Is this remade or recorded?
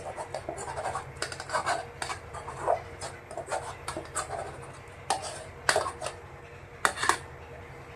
recorded